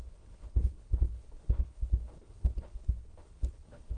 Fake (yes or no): yes